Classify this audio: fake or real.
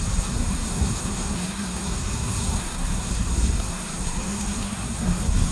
fake